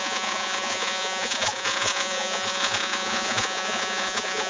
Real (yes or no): no